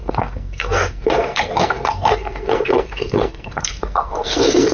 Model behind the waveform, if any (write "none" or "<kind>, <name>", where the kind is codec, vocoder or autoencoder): codec, SNAC